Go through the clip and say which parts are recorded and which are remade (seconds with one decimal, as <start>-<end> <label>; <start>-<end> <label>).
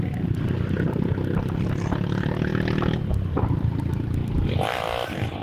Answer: 0.0-5.4 recorded